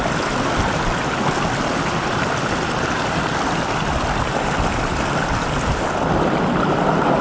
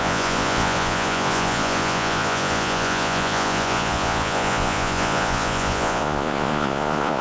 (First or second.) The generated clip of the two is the second